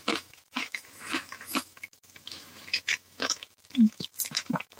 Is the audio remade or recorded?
remade